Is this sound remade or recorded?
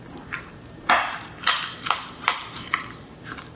remade